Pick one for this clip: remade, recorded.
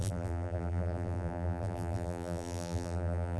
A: remade